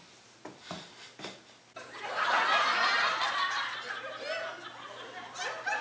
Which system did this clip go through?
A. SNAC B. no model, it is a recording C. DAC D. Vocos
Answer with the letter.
B